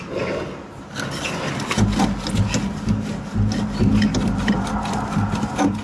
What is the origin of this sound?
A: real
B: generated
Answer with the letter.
A